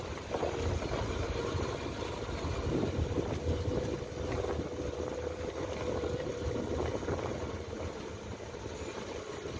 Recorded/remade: recorded